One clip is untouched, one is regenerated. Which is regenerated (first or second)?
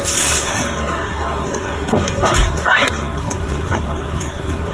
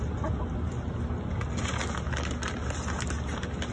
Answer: first